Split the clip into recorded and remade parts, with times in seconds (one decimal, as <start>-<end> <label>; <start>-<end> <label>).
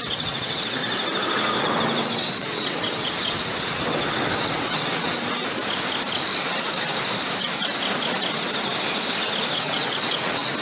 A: 0.0-0.8 remade; 0.8-1.6 recorded; 1.6-5.1 remade; 5.1-9.5 recorded; 9.5-10.6 remade